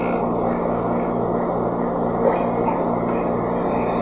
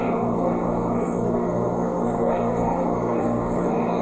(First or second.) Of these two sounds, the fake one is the second